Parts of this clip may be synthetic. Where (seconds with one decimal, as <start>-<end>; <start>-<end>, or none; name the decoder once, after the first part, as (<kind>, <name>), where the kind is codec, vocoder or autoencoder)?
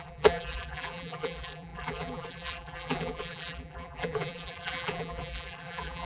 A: 0.0-6.1 (vocoder, BigVGAN v2)